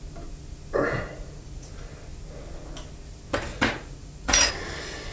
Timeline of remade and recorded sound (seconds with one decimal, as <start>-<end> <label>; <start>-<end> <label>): 0.0-1.1 recorded; 1.1-1.7 remade; 1.7-3.5 recorded; 3.5-4.5 remade; 4.5-5.1 recorded